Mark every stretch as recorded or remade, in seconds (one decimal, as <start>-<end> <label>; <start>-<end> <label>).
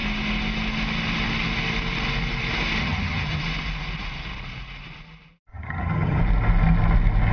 0.0-2.8 recorded; 2.8-3.4 remade; 3.4-5.5 recorded; 5.5-6.2 remade; 6.2-7.3 recorded